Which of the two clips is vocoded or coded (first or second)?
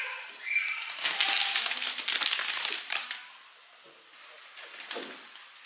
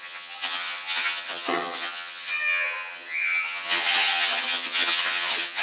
second